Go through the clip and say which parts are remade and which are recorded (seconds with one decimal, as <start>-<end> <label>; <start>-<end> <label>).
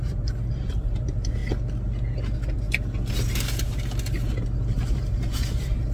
0.0-1.4 remade; 1.4-4.8 recorded; 4.8-5.9 remade